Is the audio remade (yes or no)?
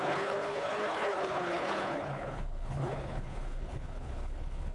yes